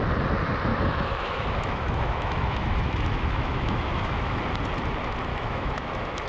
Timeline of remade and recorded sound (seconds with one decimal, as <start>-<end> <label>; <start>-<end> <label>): 0.0-0.7 recorded; 0.7-4.4 remade; 4.4-5.3 recorded; 5.3-6.3 remade